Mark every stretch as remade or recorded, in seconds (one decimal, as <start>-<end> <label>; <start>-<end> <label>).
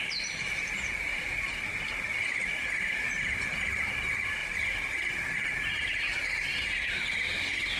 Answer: 0.0-1.1 recorded; 1.1-2.5 remade; 2.5-4.4 recorded; 4.4-4.9 remade; 4.9-7.8 recorded